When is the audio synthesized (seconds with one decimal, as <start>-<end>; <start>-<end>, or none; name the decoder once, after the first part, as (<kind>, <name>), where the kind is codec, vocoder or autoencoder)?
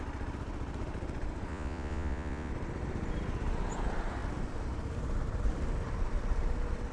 1.5-2.5 (vocoder, Vocos)